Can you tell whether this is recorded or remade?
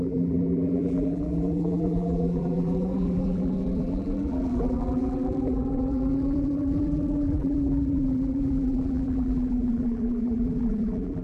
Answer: remade